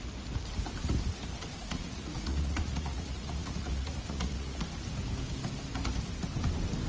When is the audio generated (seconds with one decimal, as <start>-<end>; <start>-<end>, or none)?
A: 1.6-4.6